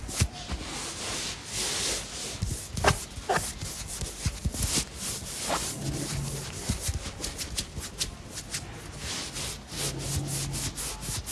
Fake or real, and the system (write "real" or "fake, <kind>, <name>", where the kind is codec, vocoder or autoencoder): real